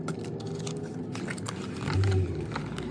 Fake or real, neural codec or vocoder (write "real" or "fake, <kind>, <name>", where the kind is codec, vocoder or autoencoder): real